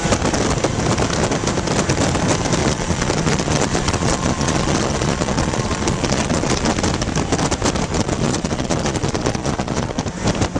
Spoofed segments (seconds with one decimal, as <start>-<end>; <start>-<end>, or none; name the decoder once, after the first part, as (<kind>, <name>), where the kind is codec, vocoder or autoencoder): 2.6-6.8 (vocoder, Vocos); 7.9-10.0